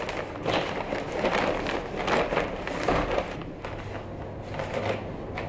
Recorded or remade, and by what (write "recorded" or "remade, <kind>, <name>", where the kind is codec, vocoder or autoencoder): recorded